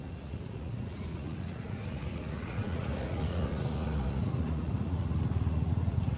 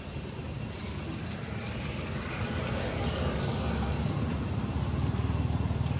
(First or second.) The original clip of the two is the second